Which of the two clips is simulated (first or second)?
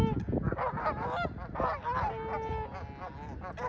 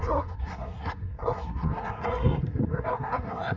second